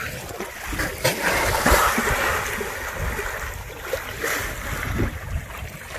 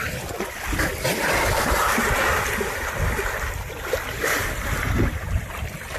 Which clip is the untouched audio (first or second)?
first